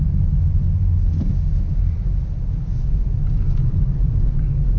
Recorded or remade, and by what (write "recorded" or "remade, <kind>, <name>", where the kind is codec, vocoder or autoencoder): recorded